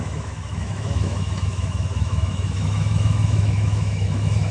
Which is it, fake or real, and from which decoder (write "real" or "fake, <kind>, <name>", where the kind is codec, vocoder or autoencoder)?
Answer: fake, autoencoder, DAC-VAE